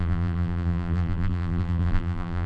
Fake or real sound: fake